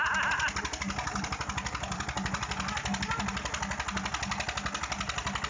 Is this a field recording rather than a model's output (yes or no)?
yes